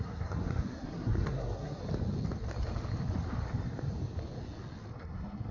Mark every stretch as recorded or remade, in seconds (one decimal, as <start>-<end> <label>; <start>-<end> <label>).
0.0-1.8 remade; 1.8-5.0 recorded; 5.0-5.5 remade